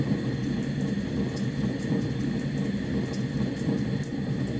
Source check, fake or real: real